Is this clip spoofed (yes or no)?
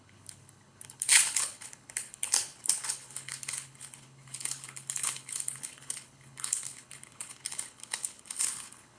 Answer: yes